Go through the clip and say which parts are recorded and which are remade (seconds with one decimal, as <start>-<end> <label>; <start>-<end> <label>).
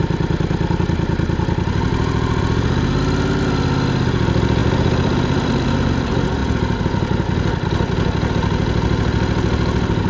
0.0-1.9 recorded; 1.9-2.4 remade; 2.4-4.6 recorded; 4.6-5.9 remade; 5.9-10.1 recorded